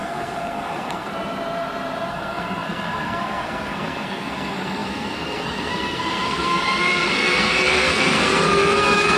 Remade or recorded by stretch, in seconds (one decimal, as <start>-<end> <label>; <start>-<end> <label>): 0.0-1.1 remade; 1.1-2.1 recorded; 2.1-9.2 remade